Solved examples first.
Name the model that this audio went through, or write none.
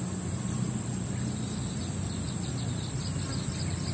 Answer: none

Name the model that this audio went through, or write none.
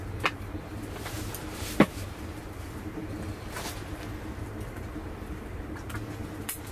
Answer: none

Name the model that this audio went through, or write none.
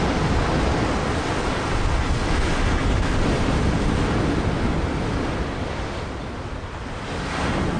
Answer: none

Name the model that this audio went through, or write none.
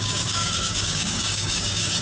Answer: codec, DAC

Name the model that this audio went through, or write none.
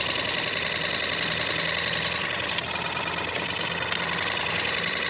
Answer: none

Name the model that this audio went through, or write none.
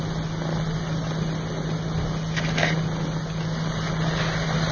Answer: none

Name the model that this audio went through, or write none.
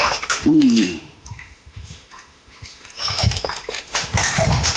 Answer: autoencoder, DAC-VAE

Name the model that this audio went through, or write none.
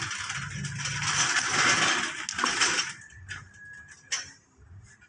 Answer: none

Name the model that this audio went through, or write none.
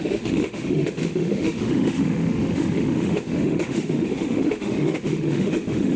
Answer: autoencoder, DAC-VAE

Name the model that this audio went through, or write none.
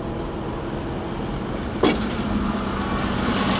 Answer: none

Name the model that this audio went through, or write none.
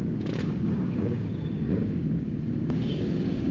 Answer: codec, DAC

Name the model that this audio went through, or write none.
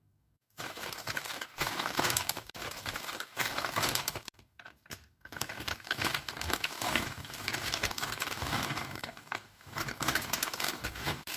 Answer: codec, DAC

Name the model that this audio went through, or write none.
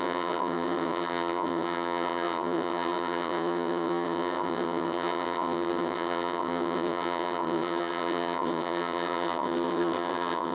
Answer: vocoder, HiFi-GAN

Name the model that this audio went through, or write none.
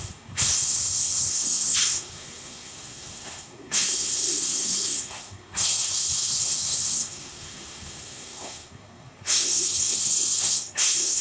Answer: codec, SNAC